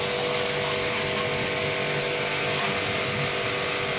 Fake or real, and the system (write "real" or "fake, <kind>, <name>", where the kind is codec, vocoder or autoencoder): real